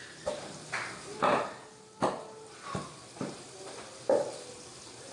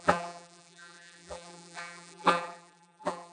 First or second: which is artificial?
second